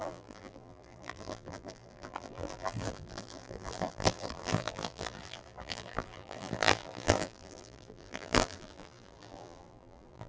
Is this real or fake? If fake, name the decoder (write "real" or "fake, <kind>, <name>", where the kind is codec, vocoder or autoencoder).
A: fake, vocoder, BigVGAN v2